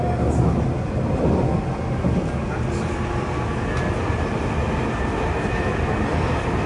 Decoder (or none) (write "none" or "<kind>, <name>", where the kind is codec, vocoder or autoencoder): none